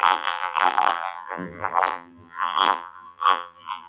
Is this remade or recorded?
remade